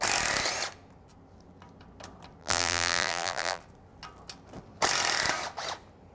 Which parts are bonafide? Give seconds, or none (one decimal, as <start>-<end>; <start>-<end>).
0.0-2.4; 3.6-6.1